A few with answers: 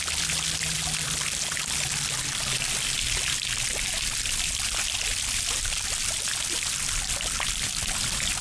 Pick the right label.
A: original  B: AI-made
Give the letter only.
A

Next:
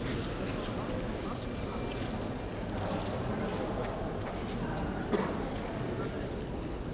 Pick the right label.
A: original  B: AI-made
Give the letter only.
A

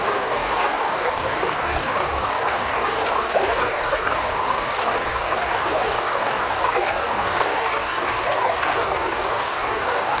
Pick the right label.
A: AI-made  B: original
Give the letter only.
A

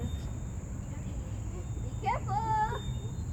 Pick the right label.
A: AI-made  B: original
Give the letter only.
B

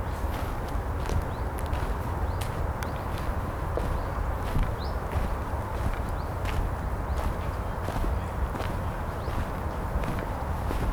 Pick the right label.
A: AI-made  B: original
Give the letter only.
B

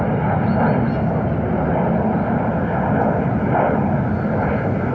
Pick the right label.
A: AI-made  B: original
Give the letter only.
B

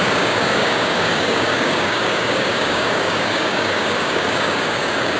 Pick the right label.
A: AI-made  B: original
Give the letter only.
A